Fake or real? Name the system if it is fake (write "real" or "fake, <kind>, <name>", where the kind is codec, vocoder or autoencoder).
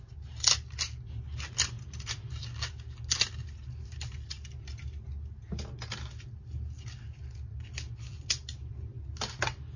real